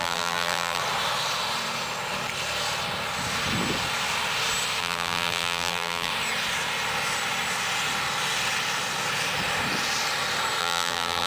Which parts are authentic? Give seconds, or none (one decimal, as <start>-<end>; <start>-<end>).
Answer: 0.8-4.8; 6.1-10.6